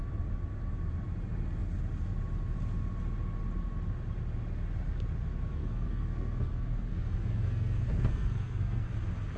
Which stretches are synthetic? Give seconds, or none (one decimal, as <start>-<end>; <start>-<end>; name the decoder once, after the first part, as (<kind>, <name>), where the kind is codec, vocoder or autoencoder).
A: 5.5-8.9 (codec, SNAC)